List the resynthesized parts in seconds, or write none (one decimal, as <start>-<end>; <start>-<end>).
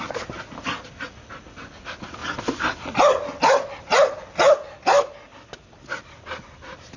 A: none